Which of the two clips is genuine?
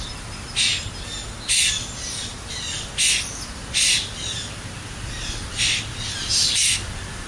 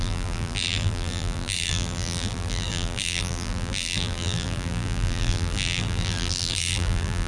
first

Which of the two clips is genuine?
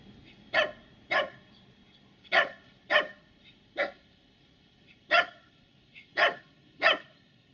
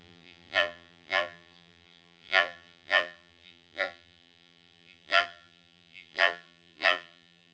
first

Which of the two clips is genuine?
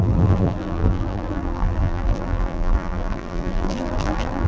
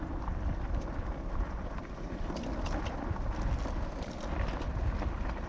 second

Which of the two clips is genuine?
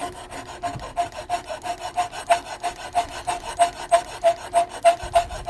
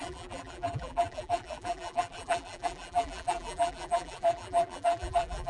first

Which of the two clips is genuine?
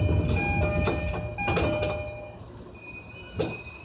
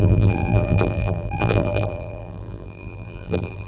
first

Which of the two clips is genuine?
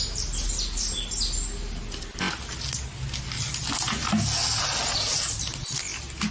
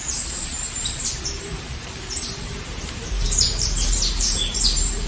first